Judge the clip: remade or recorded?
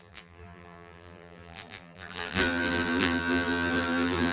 remade